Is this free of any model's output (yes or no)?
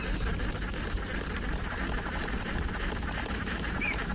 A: yes